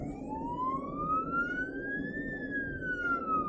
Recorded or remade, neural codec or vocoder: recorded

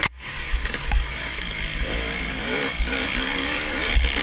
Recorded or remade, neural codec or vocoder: remade, codec, DAC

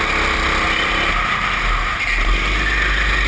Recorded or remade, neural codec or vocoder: recorded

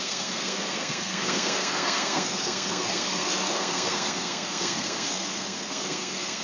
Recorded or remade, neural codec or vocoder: remade, codec, SNAC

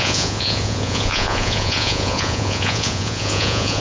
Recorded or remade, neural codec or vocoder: remade, vocoder, Vocos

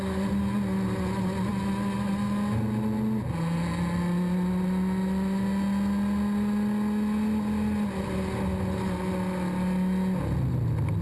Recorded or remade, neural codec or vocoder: recorded